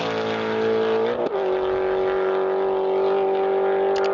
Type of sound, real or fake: real